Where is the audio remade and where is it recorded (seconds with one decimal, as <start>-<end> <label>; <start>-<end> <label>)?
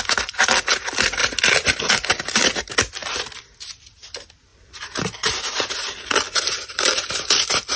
0.0-1.2 recorded; 1.2-1.9 remade; 1.9-4.5 recorded; 4.5-7.1 remade; 7.1-7.8 recorded